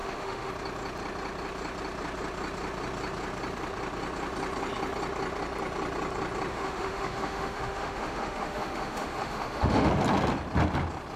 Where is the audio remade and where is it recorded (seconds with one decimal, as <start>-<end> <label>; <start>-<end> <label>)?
0.0-0.5 remade; 0.5-6.5 recorded; 6.5-9.9 remade; 9.9-11.2 recorded